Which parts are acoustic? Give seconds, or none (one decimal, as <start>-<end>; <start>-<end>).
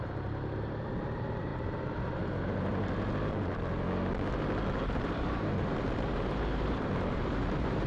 2.7-4.8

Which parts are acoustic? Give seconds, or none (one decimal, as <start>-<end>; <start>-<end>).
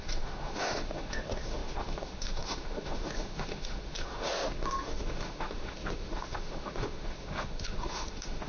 none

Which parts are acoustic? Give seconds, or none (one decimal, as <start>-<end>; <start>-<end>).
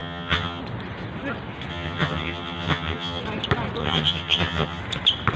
0.6-1.7; 3.2-3.8; 4.8-5.4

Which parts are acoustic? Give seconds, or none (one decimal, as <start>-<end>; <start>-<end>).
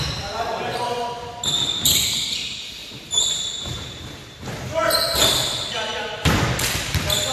0.0-2.8; 3.3-7.3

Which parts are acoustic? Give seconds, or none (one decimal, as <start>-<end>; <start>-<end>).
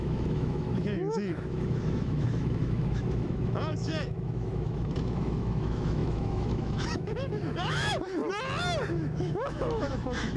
8.2-8.9